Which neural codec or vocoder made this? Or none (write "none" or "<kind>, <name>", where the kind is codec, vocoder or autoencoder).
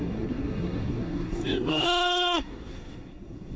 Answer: codec, SNAC